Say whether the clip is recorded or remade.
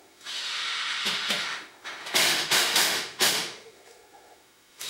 remade